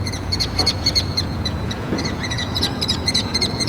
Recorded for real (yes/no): no